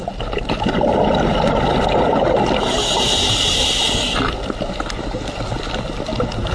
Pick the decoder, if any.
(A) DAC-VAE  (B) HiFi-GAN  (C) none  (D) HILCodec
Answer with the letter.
C